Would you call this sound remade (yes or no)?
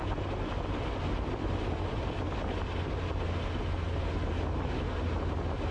no